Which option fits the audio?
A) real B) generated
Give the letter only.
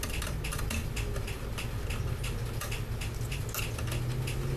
A